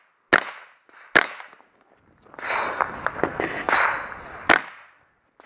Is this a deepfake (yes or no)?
no